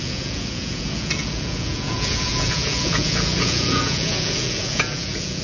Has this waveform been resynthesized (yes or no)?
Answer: yes